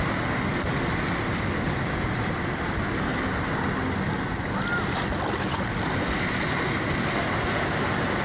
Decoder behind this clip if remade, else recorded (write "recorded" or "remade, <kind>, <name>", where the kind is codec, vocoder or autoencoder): recorded